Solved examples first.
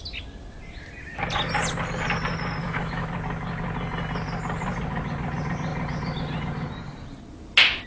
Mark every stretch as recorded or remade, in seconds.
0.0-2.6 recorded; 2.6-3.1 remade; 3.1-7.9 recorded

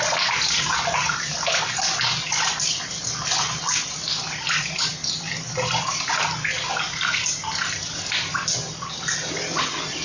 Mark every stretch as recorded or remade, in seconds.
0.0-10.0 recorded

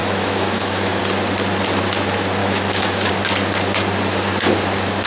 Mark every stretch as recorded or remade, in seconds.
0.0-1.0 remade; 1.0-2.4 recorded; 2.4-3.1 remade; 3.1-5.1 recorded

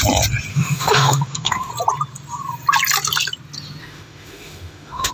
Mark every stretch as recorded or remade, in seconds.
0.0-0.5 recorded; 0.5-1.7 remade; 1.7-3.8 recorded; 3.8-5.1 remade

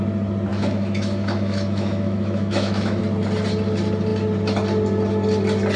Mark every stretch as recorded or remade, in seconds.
0.0-0.5 recorded; 0.5-3.0 remade; 3.0-5.8 recorded